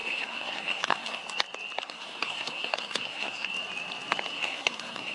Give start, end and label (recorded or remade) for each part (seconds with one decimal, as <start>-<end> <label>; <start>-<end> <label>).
0.0-1.2 remade; 1.2-1.8 recorded; 1.8-3.5 remade; 3.5-4.3 recorded; 4.3-5.1 remade